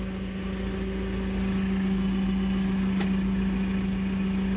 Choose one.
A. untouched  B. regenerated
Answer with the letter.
A